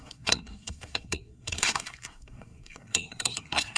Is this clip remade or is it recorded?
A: remade